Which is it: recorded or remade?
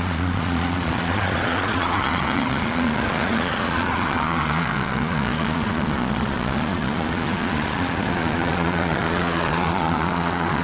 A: remade